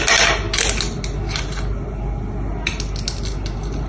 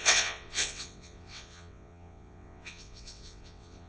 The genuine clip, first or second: first